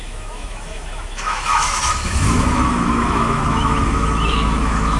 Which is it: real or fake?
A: fake